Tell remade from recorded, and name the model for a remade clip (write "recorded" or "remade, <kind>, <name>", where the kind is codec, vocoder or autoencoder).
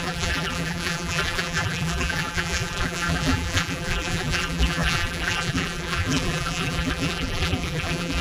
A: remade, vocoder, BigVGAN v2